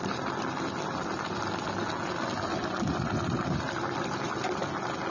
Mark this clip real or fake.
real